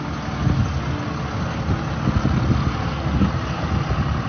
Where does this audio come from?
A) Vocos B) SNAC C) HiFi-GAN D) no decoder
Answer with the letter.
D